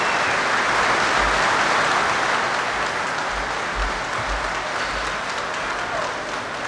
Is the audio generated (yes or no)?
no